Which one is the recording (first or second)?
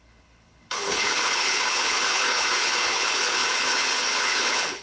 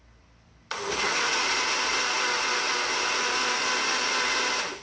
second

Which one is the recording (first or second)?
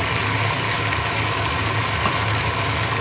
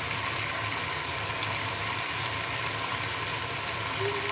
first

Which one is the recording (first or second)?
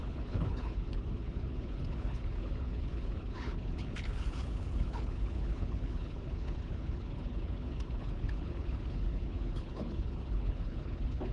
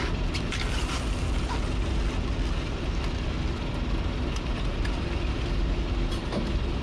second